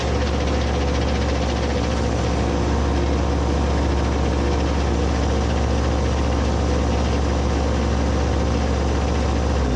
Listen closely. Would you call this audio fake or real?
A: real